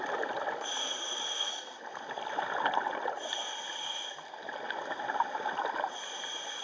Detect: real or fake real